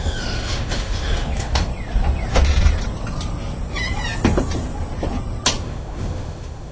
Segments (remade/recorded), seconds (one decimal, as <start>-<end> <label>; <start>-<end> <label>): 0.0-1.7 remade; 1.7-5.6 recorded; 5.6-6.7 remade